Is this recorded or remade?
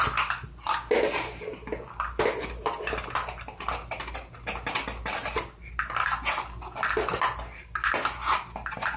recorded